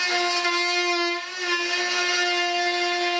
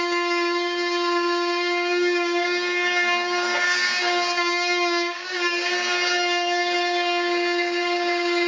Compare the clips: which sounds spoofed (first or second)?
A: second